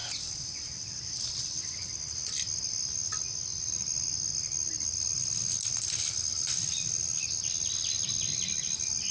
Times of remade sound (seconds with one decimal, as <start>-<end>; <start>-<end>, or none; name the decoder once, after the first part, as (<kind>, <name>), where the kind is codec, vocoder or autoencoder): 0.0-1.6 (vocoder, BigVGAN v2)